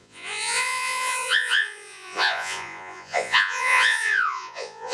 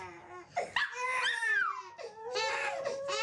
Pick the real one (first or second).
second